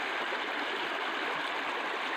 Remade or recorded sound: recorded